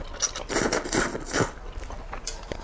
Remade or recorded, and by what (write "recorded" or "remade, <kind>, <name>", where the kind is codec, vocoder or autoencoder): recorded